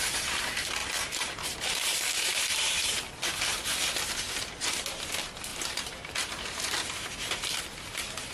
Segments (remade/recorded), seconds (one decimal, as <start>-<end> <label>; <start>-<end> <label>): 0.0-0.8 recorded; 0.8-3.0 remade; 3.0-5.5 recorded; 5.5-7.6 remade; 7.6-8.3 recorded